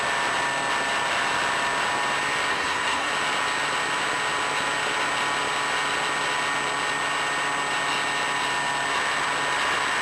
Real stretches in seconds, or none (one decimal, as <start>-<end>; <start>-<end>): 0.0-2.5; 3.1-10.0